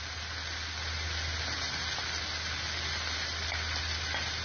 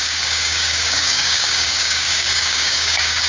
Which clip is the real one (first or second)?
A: first